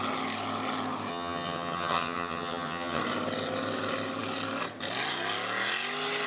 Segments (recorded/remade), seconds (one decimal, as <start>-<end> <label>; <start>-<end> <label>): 0.0-1.1 recorded; 1.1-3.0 remade; 3.0-6.3 recorded